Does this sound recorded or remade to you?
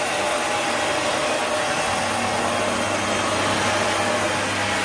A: recorded